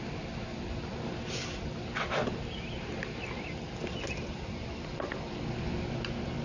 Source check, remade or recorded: recorded